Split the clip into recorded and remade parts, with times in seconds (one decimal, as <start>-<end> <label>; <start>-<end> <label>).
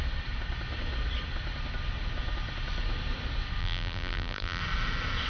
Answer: 0.0-3.6 recorded; 3.6-4.6 remade; 4.6-5.3 recorded